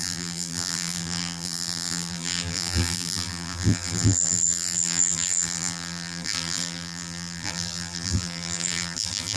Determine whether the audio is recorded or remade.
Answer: remade